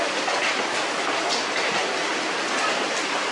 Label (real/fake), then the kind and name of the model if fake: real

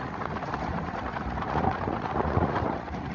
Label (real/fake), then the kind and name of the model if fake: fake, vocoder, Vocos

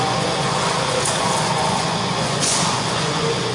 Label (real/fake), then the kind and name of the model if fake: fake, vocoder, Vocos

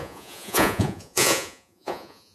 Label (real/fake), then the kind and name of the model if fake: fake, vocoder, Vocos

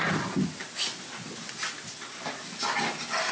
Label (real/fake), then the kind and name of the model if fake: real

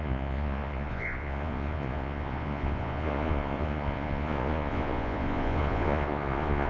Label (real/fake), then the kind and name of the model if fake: fake, vocoder, Vocos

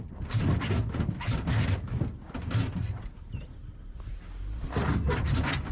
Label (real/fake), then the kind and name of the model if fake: real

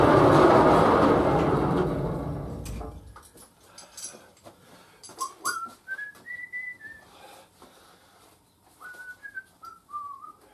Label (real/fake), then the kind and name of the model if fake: real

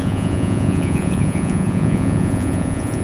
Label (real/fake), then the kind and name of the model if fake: fake, vocoder, Vocos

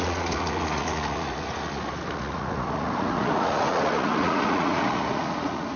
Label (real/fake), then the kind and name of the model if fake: fake, vocoder, Vocos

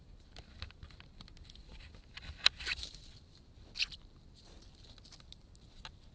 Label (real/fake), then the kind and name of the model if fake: real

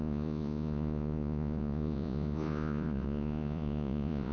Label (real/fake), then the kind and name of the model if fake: fake, vocoder, Vocos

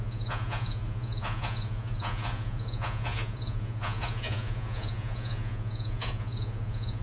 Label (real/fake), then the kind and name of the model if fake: fake, vocoder, Vocos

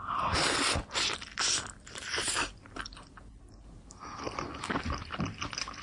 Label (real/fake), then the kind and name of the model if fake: real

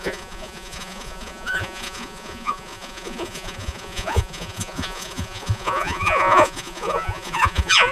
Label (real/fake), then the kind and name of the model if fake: fake, vocoder, Vocos